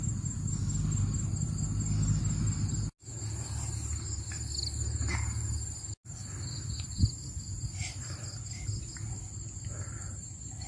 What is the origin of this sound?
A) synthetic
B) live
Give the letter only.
B